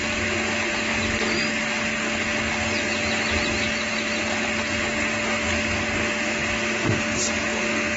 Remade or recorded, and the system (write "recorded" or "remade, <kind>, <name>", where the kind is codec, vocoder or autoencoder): recorded